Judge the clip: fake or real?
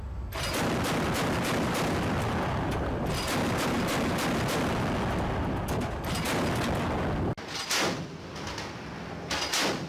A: real